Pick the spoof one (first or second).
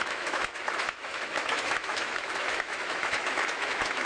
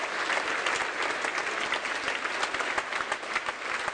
first